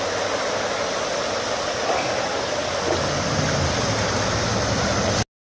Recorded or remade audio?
recorded